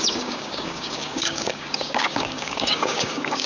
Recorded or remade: remade